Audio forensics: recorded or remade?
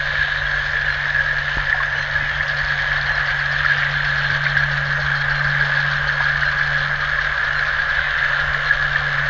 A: recorded